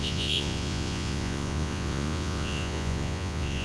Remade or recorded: remade